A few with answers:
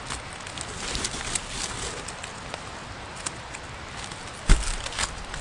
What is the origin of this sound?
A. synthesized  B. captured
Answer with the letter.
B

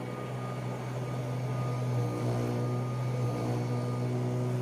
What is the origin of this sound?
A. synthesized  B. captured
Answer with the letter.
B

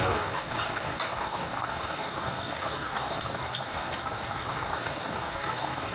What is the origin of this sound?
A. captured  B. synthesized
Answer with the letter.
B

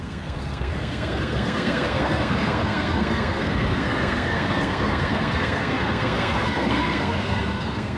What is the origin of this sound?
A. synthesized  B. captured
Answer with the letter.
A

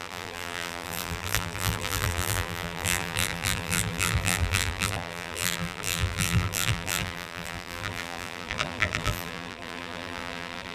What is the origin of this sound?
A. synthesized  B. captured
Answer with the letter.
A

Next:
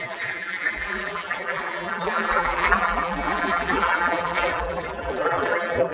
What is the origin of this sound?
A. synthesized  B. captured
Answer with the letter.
A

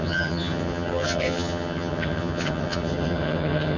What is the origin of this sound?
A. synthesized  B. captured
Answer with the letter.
A